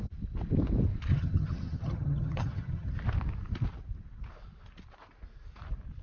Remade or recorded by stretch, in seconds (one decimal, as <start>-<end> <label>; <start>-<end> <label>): 0.0-1.1 recorded; 1.1-2.9 remade; 2.9-6.0 recorded